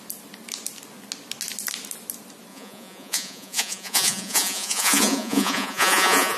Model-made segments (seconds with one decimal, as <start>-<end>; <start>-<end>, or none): 2.5-6.4